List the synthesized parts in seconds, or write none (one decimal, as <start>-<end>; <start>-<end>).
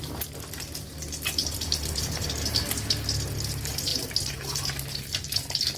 1.4-2.7; 3.9-5.8